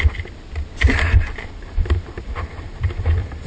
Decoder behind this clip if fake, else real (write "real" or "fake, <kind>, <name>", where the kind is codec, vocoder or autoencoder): real